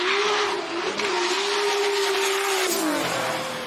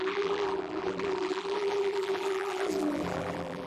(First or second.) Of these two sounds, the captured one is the first